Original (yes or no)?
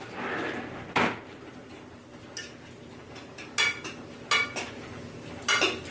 yes